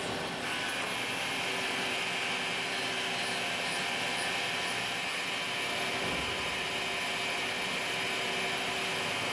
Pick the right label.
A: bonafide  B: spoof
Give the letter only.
A